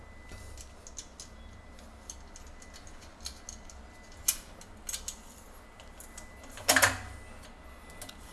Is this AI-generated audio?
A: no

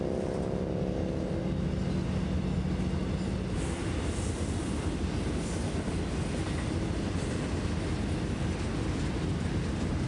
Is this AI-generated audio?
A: no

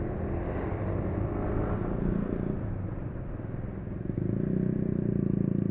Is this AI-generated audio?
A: no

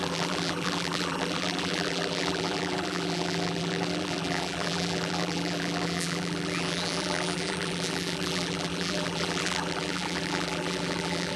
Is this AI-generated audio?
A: yes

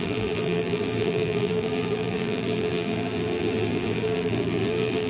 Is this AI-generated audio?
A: yes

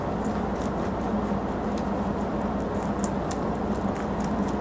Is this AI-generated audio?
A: no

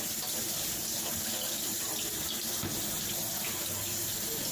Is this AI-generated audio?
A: no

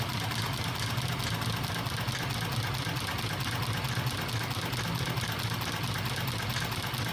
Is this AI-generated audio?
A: no